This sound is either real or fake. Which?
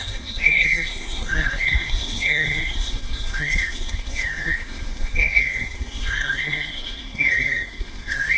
fake